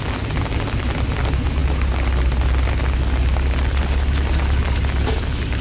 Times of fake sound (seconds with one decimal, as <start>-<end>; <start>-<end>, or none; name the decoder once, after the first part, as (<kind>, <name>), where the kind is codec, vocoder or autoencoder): none